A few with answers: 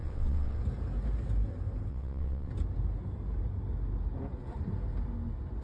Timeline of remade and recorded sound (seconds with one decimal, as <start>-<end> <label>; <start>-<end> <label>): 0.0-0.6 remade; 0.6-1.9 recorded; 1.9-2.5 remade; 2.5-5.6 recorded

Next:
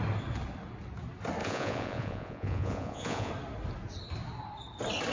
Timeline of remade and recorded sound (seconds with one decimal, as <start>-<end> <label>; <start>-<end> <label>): 0.0-1.4 recorded; 1.4-3.3 remade; 3.3-5.1 recorded

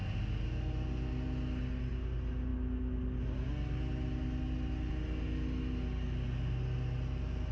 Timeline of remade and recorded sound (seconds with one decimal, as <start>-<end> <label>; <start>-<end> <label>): 0.0-7.5 recorded

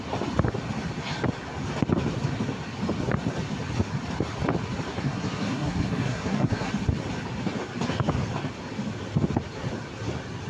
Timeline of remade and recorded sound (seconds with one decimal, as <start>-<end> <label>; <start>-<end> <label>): 0.0-4.9 recorded; 4.9-6.7 remade; 6.7-10.5 recorded